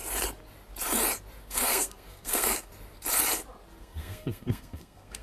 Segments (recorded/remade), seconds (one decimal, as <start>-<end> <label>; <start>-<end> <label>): 0.0-1.4 recorded; 1.4-2.7 remade; 2.7-3.8 recorded; 3.8-5.2 remade